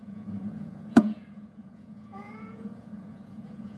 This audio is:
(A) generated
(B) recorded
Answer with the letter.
A